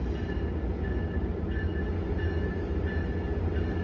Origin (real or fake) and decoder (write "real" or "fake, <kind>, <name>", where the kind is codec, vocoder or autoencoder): real